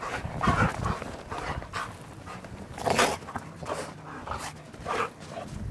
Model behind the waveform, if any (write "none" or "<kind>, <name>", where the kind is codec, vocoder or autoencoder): none